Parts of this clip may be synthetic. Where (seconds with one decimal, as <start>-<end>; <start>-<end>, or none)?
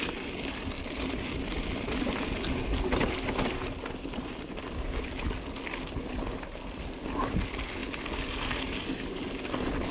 none